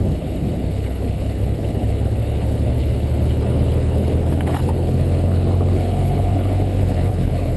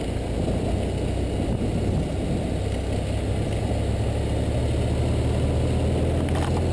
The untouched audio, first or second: second